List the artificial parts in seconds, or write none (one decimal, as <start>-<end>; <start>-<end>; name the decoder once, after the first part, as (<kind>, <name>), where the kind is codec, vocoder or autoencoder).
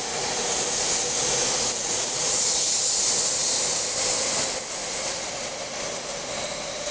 1.8-2.8 (vocoder, Vocos)